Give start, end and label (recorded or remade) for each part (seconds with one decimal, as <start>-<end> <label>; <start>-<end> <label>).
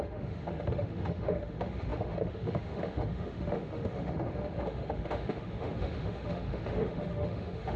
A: 0.0-7.8 remade